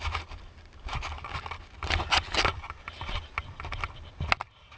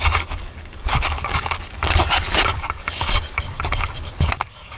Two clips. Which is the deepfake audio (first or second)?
second